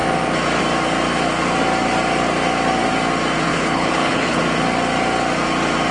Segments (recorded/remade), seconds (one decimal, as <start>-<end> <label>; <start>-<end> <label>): 0.0-3.5 recorded; 3.5-4.4 remade; 4.4-5.9 recorded